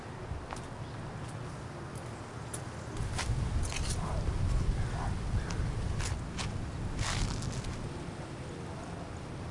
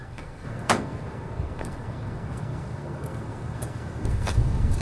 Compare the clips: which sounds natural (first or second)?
first